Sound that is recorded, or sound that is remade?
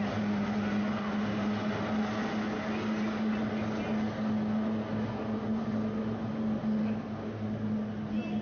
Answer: recorded